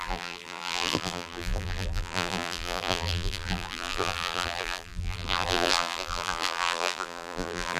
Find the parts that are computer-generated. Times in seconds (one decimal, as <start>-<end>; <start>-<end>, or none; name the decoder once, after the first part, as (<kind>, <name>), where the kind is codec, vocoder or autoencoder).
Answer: 0.0-7.8 (vocoder, BigVGAN v2)